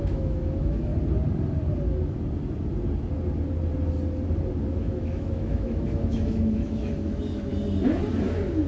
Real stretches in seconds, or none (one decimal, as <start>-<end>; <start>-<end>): 0.9-4.6; 7.5-8.7